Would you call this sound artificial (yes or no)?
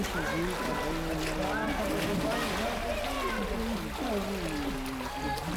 no